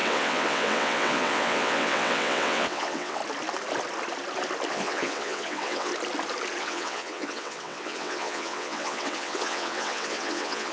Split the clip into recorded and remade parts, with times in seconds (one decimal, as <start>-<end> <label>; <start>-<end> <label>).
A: 0.0-3.2 remade; 3.2-4.7 recorded; 4.7-5.9 remade; 5.9-6.6 recorded; 6.6-10.7 remade